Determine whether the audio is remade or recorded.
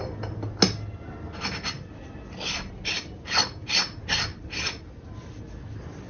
recorded